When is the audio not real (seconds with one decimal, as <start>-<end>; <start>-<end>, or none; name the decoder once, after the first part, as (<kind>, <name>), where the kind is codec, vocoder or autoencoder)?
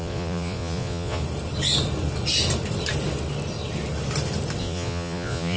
0.0-1.2 (vocoder, Vocos); 4.6-5.6